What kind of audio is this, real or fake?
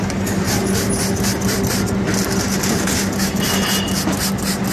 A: real